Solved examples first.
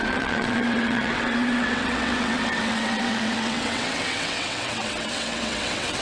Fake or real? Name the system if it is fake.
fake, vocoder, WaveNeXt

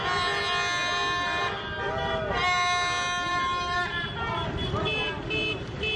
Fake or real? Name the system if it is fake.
real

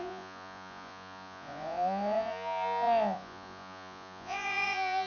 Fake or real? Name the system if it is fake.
fake, vocoder, Vocos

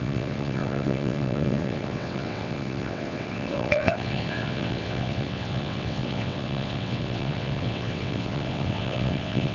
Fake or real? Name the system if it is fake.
fake, vocoder, WaveNeXt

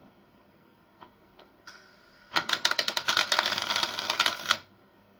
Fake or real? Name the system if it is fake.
fake, codec, SNAC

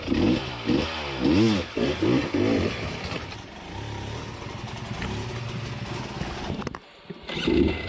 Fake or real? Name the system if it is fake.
real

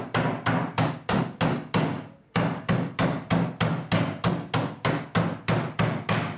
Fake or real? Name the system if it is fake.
real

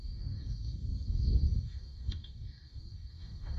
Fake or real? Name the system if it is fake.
fake, codec, DAC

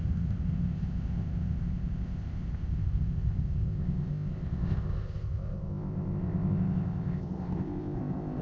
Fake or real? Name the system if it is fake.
fake, codec, ZipCodec